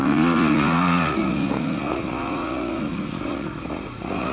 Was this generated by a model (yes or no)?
yes